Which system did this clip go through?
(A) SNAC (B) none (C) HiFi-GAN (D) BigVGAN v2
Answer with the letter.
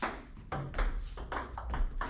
B